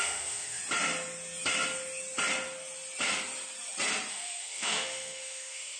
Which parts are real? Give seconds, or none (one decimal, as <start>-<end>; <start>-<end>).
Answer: 0.6-4.1

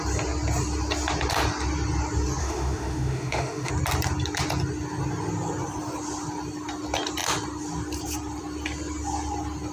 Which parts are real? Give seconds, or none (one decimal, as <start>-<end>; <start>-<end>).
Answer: 0.0-2.4; 3.7-9.7

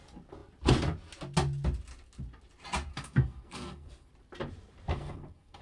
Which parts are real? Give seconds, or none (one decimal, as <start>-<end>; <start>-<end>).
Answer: 0.0-2.9; 4.1-4.9

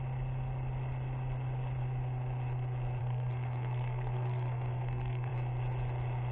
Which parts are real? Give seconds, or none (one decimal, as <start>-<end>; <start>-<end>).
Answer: 0.0-3.0; 5.3-6.3

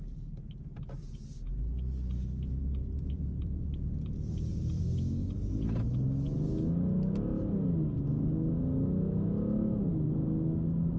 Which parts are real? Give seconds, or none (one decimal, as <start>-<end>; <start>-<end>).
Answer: 0.0-2.8; 4.8-11.0